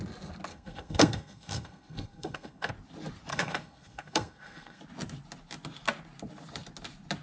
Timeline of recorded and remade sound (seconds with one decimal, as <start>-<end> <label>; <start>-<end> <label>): 0.0-0.5 recorded; 0.5-2.7 remade; 2.7-3.3 recorded; 3.3-4.8 remade; 4.8-7.2 recorded

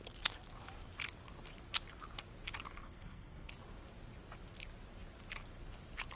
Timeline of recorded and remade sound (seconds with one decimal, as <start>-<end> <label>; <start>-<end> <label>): 0.0-2.8 recorded; 2.8-3.5 remade; 3.5-6.2 recorded

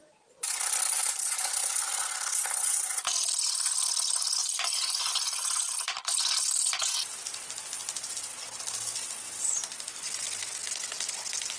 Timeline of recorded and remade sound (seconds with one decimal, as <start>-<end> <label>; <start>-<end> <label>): 0.0-1.0 recorded; 1.0-1.9 remade; 1.9-4.4 recorded; 4.4-5.1 remade; 5.1-11.6 recorded

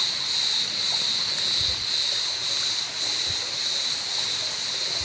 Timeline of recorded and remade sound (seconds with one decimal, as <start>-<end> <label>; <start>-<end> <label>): 0.0-5.0 recorded

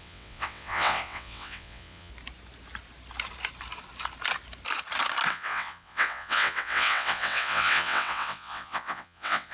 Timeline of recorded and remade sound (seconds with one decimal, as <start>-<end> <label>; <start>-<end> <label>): 0.0-2.1 remade; 2.1-5.3 recorded; 5.3-9.5 remade